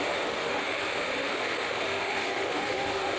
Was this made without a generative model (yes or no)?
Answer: no